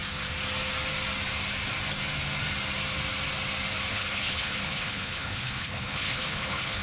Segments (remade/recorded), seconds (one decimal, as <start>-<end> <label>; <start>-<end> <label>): 0.0-3.9 recorded; 3.9-6.8 remade